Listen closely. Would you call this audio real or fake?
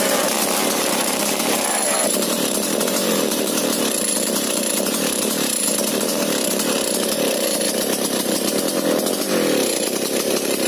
fake